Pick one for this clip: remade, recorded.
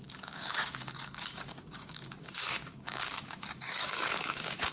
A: remade